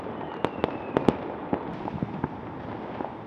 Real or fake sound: real